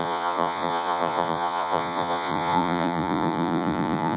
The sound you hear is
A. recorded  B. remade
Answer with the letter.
B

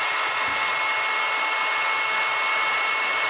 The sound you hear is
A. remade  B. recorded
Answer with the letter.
B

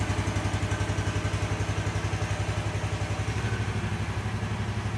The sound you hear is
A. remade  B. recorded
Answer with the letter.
B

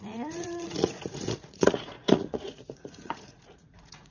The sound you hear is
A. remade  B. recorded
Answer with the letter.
A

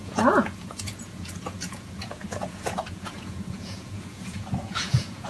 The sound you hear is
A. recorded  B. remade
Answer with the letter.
B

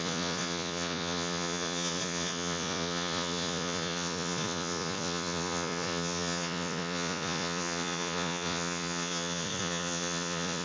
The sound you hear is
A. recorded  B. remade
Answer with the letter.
B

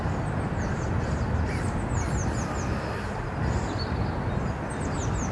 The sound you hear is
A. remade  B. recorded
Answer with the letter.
B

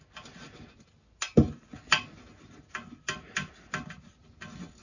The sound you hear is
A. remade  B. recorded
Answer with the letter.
B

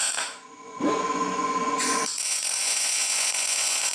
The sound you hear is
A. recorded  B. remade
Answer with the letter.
B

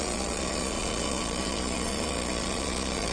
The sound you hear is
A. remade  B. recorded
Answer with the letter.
A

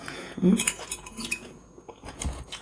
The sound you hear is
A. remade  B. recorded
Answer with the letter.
A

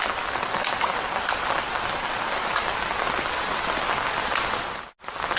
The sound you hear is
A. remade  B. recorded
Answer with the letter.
B